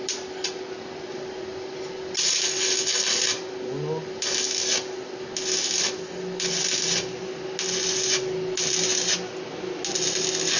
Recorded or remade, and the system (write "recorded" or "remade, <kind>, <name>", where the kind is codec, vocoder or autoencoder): recorded